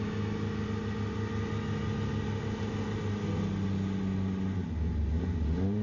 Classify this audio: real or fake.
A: real